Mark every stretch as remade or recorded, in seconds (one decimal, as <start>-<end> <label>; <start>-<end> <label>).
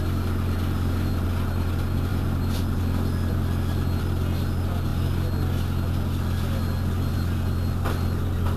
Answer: 0.0-8.6 recorded